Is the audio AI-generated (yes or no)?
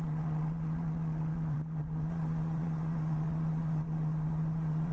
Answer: yes